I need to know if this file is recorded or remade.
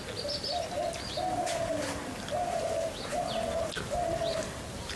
recorded